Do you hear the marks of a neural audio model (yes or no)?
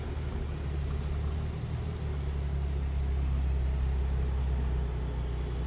no